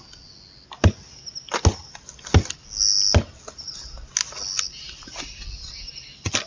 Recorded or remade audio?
recorded